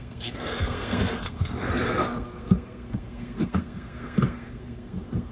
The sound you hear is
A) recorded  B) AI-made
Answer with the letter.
B